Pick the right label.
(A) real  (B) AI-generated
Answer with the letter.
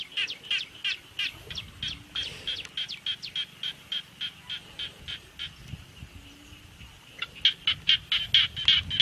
A